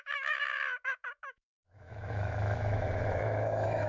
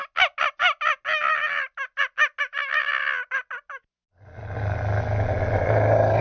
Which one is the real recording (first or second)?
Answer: second